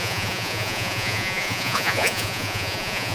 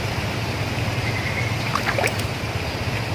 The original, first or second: second